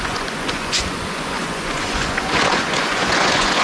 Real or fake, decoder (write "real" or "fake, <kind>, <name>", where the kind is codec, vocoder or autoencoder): fake, vocoder, Vocos